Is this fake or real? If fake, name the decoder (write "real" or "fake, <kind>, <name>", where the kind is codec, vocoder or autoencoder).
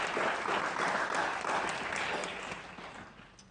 real